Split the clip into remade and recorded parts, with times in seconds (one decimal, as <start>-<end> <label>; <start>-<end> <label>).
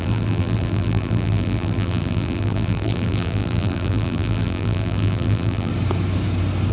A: 0.0-5.7 remade; 5.7-6.7 recorded